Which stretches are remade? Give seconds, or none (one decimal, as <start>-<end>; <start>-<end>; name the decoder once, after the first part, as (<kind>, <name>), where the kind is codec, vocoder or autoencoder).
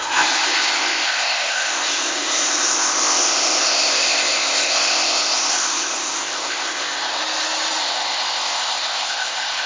0.0-7.2 (codec, ZipCodec); 7.8-9.7